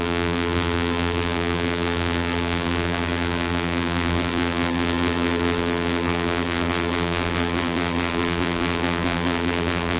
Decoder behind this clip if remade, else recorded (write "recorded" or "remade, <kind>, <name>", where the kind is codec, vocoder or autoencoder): remade, vocoder, BigVGAN v2